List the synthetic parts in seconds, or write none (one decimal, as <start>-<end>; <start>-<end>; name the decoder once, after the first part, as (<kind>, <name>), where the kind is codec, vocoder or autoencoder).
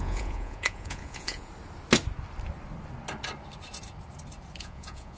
0.0-1.5 (vocoder, Vocos); 4.6-5.2